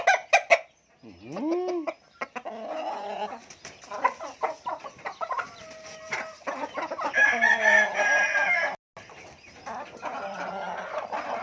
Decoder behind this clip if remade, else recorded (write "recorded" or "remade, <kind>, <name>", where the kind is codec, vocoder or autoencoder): recorded